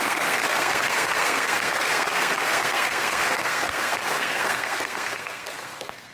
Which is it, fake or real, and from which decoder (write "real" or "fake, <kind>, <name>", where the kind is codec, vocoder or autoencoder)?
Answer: fake, codec, SNAC